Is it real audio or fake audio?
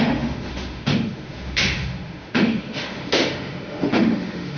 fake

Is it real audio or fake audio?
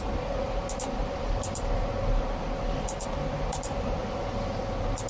real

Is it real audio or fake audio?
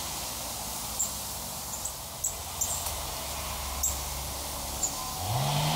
real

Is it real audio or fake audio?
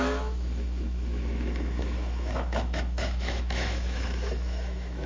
fake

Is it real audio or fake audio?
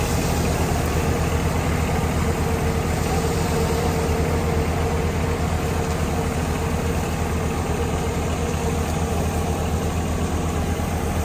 real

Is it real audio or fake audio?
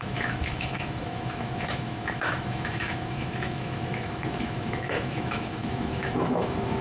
fake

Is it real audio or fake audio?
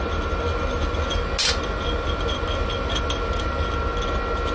real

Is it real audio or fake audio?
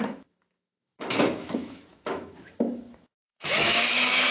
fake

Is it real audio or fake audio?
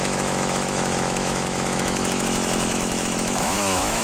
fake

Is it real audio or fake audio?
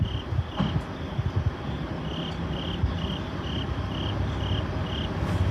real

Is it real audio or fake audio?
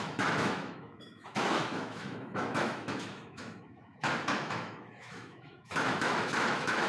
fake